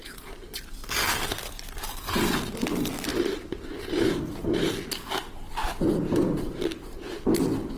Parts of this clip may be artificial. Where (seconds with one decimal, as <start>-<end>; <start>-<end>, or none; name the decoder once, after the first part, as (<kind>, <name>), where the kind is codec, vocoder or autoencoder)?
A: 3.1-4.6 (vocoder, BigVGAN v2); 5.6-7.3